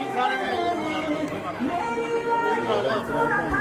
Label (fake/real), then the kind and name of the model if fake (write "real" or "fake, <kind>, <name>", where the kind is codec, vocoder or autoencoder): fake, autoencoder, DAC-VAE